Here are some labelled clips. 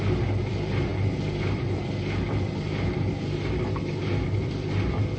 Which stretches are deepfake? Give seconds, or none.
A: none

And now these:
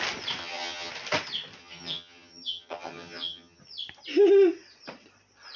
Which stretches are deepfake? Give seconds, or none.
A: 0.4-0.9; 1.6-3.6

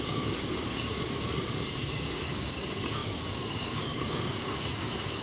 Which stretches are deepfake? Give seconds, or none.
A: 0.0-5.2